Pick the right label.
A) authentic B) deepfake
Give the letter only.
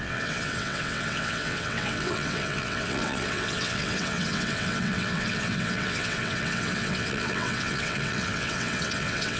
B